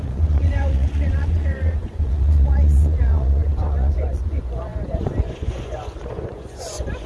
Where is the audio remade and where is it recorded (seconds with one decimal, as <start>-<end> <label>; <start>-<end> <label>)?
0.0-7.1 remade

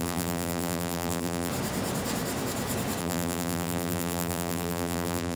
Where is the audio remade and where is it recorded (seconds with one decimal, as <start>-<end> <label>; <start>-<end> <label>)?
0.0-1.5 remade; 1.5-3.0 recorded; 3.0-5.4 remade

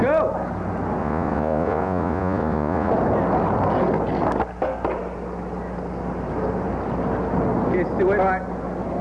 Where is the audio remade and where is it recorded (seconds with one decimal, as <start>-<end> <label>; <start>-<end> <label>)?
0.0-1.0 recorded; 1.0-2.9 remade; 2.9-9.0 recorded

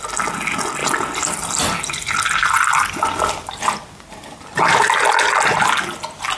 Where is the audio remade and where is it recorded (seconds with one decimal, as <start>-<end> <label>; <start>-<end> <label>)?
0.0-0.8 recorded; 0.8-4.6 remade; 4.6-6.4 recorded

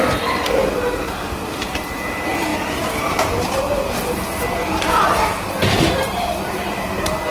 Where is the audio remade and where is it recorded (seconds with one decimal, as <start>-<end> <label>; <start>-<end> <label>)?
0.0-7.3 recorded

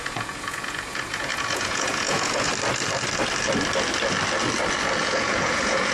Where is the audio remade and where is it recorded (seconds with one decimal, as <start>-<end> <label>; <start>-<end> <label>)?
0.0-2.5 remade; 2.5-5.0 recorded; 5.0-5.9 remade

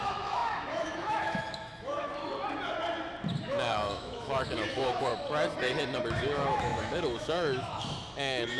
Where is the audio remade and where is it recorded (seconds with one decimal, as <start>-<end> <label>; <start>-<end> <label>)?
0.0-2.2 remade; 2.2-3.4 recorded; 3.4-5.1 remade; 5.1-6.0 recorded; 6.0-8.6 remade